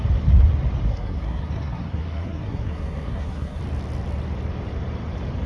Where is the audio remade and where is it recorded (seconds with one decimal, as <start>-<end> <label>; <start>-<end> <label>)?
0.0-0.9 recorded; 0.9-3.6 remade; 3.6-5.5 recorded